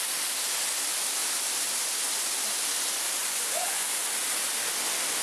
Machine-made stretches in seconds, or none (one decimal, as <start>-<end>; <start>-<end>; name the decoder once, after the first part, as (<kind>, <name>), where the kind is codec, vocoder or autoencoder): 3.2-4.0 (vocoder, Vocos)